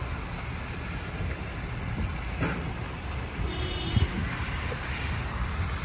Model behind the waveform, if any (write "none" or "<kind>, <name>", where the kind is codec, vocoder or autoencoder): none